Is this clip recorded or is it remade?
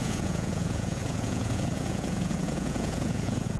remade